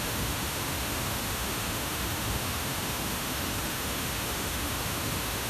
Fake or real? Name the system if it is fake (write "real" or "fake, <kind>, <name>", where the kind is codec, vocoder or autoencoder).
fake, autoencoder, DAC-VAE